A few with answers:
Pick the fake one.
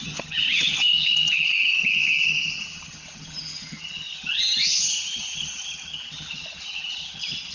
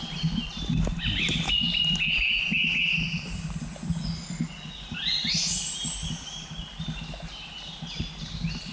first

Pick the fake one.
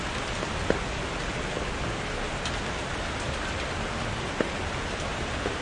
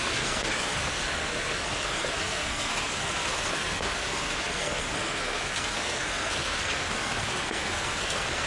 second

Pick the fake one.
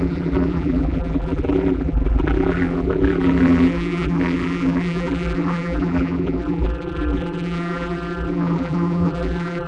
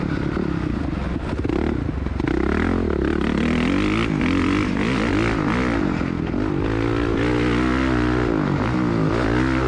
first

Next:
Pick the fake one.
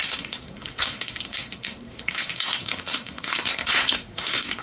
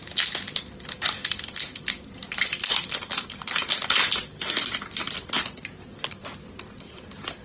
first